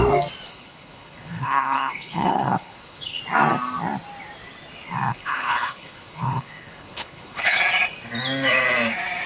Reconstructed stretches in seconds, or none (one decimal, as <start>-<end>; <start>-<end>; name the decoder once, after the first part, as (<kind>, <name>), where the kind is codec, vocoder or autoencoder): 0.5-3.2 (codec, HILCodec); 5.1-7.6